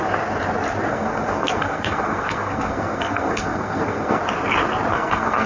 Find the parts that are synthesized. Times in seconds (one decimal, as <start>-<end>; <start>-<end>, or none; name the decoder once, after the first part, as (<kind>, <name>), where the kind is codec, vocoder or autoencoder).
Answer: 0.9-4.2 (codec, SNAC); 4.9-5.5

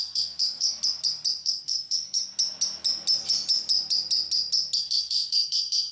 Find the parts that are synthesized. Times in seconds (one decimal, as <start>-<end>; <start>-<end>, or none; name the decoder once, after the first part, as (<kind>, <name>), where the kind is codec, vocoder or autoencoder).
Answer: 0.0-0.8 (codec, SNAC); 1.4-2.2; 4.8-5.9